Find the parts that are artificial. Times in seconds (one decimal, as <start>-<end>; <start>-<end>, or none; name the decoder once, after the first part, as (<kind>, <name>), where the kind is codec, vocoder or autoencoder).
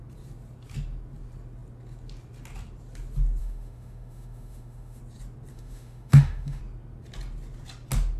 3.4-5.0 (autoencoder, DAC-VAE); 5.5-6.6